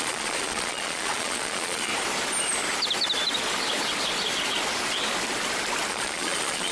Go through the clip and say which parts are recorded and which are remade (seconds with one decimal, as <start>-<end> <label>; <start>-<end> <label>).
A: 0.0-1.9 remade; 1.9-5.9 recorded; 5.9-6.7 remade